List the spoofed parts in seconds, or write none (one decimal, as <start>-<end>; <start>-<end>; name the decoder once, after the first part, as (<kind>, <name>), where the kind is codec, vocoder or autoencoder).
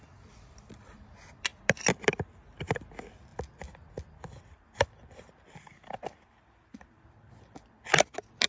0.0-3.3 (vocoder, BigVGAN v2); 4.4-8.5